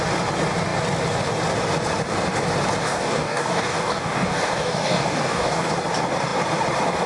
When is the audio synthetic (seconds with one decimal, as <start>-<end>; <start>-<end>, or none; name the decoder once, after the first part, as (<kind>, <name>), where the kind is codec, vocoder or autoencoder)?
2.8-5.7 (codec, DAC)